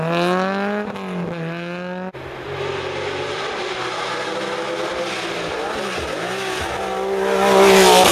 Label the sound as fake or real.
real